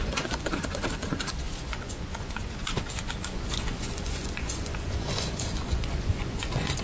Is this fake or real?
fake